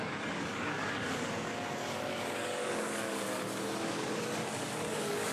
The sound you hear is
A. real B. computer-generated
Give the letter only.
B